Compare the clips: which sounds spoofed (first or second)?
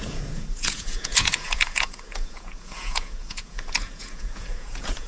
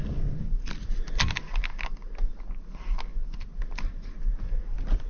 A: first